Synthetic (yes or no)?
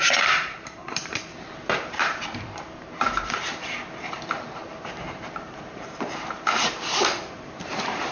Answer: yes